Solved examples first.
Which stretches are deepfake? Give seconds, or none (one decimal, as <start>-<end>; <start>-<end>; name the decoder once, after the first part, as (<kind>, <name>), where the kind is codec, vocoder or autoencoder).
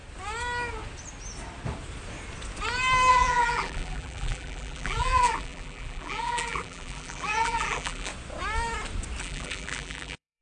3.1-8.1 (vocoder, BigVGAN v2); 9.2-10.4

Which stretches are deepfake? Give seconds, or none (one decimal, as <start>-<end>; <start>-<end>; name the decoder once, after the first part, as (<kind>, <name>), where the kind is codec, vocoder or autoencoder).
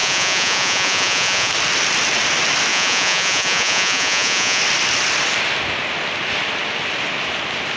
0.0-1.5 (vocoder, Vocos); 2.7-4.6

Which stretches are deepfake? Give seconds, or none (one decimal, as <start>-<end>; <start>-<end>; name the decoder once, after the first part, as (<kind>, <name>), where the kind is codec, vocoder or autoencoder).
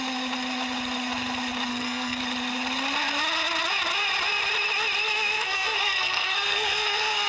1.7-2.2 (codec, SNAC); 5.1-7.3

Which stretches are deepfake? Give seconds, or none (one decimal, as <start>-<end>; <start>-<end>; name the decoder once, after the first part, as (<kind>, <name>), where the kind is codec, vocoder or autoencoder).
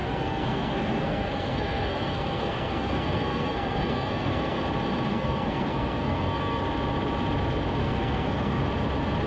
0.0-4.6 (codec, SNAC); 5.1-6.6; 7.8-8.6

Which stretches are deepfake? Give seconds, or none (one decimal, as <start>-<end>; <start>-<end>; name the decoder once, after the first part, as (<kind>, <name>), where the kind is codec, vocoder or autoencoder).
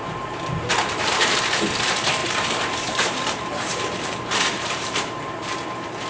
0.0-1.4 (vocoder, BigVGAN v2); 2.2-6.1